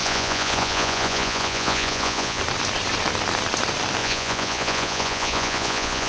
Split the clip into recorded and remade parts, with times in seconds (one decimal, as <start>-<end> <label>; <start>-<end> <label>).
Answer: 0.0-2.4 remade; 2.4-4.0 recorded; 4.0-6.1 remade